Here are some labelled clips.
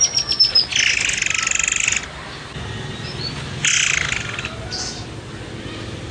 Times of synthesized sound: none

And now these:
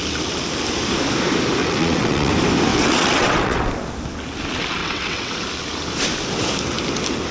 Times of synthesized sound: 1.6-2.3 (vocoder, WaveNeXt); 2.7-3.7; 4.8-5.4

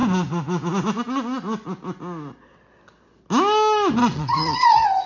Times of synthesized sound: 4.0-5.1 (vocoder, WaveNeXt)

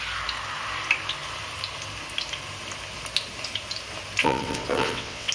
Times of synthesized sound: 4.2-5.3 (vocoder, WaveNeXt)

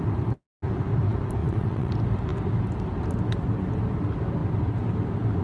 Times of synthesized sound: 1.4-1.9 (vocoder, WaveNeXt)

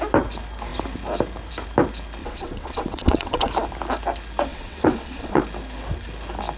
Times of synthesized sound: 2.2-3.5 (vocoder, WaveNeXt); 4.5-5.4

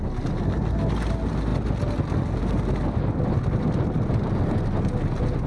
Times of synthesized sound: none